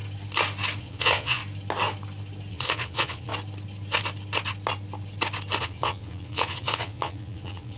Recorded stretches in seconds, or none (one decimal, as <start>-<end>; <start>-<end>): 0.0-0.8; 1.4-2.5; 3.3-5.6